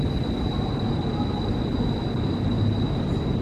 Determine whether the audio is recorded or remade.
recorded